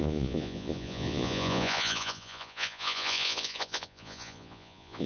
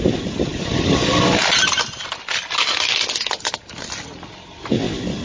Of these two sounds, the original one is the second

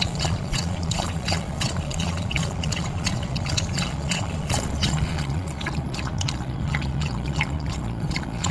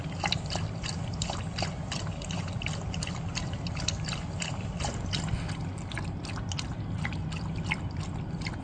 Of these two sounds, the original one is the second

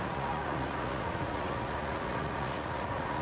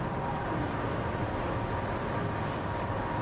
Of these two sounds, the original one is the second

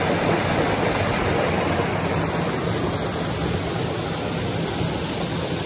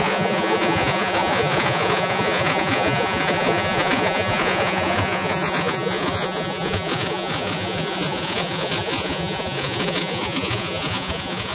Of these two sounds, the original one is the first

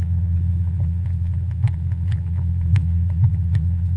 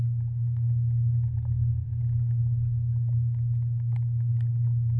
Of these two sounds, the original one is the second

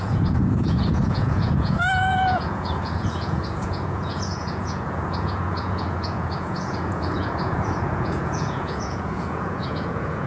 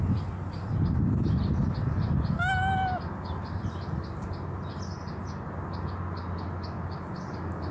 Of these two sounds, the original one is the second